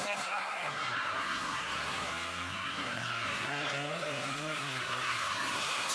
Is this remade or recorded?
remade